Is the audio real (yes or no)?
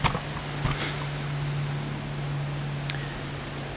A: yes